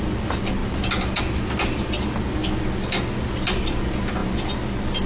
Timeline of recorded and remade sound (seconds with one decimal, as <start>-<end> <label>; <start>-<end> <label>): 0.0-5.1 recorded